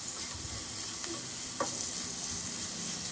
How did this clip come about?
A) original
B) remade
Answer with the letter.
A